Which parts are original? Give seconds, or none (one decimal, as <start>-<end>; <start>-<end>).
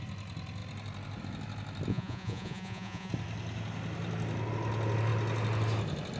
0.0-1.9; 3.1-6.2